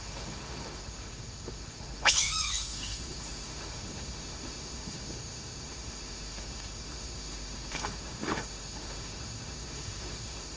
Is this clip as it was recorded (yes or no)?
no